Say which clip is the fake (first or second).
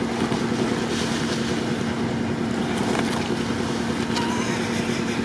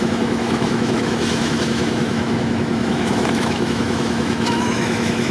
second